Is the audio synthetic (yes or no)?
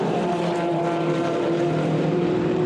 yes